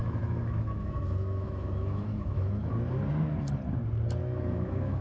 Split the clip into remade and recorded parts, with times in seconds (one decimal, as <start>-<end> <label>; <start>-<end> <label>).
0.0-2.7 remade; 2.7-4.2 recorded; 4.2-5.0 remade

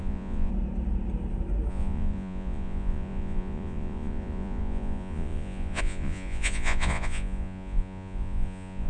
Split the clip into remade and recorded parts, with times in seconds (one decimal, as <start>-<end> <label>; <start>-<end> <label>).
0.0-0.5 remade; 0.5-1.7 recorded; 1.7-8.9 remade

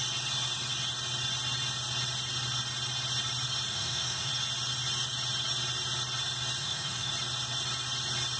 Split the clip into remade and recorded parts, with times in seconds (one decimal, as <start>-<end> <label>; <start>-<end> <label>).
0.0-3.7 recorded; 3.7-4.3 remade; 4.3-6.6 recorded; 6.6-7.1 remade; 7.1-8.4 recorded

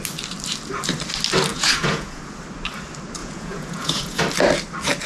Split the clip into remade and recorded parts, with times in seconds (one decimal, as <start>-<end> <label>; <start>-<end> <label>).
0.0-1.5 recorded; 1.5-2.2 remade; 2.2-3.2 recorded; 3.2-4.2 remade; 4.2-5.1 recorded

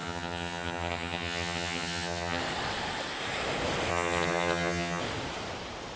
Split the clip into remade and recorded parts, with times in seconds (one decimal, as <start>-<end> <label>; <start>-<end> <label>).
0.0-2.4 remade; 2.4-3.9 recorded; 3.9-5.0 remade; 5.0-6.0 recorded

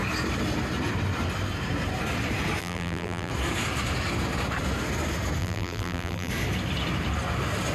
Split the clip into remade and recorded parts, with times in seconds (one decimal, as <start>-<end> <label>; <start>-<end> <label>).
0.0-2.6 recorded; 2.6-3.3 remade; 3.3-5.4 recorded; 5.4-6.3 remade; 6.3-7.7 recorded

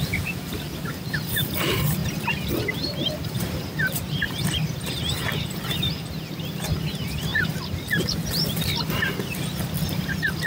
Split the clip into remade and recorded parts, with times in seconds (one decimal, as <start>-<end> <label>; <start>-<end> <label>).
0.0-7.3 remade; 7.3-8.5 recorded; 8.5-10.5 remade